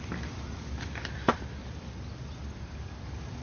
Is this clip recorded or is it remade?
recorded